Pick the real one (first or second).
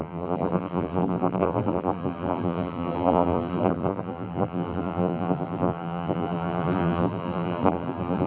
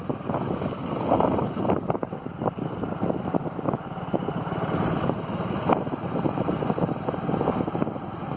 second